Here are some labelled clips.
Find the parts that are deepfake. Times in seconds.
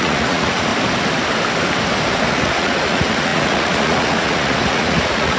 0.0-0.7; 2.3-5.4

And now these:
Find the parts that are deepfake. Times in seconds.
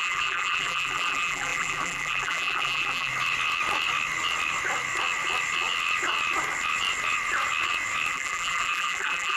0.0-3.1; 8.1-9.4